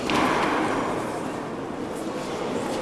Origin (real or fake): real